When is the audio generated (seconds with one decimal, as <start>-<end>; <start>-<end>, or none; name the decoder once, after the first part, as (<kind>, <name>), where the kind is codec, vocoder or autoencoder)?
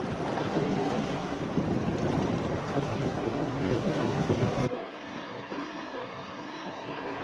0.4-1.4 (codec, SNAC); 2.6-7.2